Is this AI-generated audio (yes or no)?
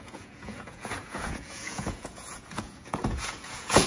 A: yes